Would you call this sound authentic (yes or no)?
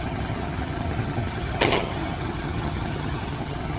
no